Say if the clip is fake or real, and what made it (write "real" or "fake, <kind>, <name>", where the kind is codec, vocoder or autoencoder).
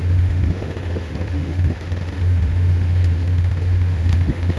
fake, autoencoder, DAC-VAE